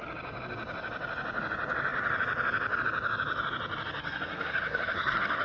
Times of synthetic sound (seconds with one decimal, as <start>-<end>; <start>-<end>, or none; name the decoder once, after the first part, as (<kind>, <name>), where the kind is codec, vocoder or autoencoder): 4.0-5.4 (codec, SNAC)